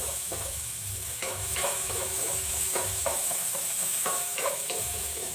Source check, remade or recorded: remade